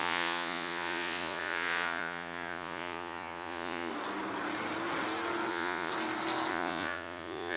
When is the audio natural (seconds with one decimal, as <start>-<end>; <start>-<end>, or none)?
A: 3.9-5.5; 5.9-6.5